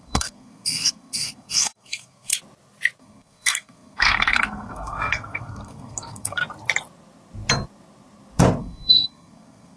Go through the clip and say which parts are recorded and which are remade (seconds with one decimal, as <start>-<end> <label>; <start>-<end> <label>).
0.0-2.3 remade; 2.3-3.0 recorded; 3.0-6.4 remade; 6.4-8.6 recorded; 8.6-9.8 remade